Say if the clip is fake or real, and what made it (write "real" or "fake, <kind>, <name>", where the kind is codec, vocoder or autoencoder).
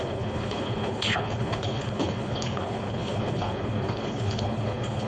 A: fake, codec, HILCodec